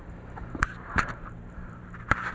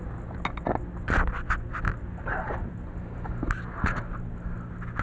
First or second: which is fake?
first